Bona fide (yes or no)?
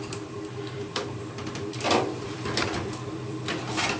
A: no